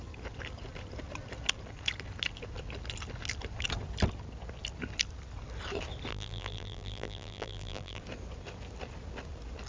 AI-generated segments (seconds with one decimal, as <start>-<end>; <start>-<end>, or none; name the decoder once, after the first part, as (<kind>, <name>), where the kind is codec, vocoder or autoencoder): 6.1-8.0 (vocoder, BigVGAN v2)